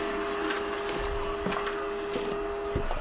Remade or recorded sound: recorded